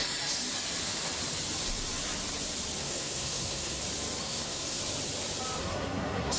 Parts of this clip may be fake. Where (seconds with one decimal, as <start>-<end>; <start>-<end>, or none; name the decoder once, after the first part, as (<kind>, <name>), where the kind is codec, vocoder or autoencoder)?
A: 2.8-3.8 (codec, SNAC); 4.2-4.8; 5.6-6.4